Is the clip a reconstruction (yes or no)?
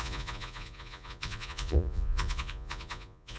yes